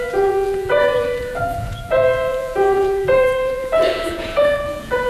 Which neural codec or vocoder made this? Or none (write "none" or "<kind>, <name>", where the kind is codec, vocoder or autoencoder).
vocoder, Vocos